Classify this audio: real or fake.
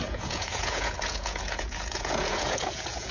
fake